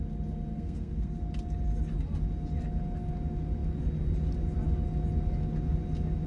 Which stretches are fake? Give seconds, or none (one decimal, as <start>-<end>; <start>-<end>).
0.5-1.2